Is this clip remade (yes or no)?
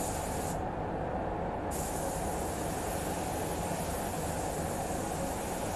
no